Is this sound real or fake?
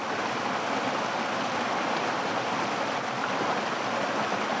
real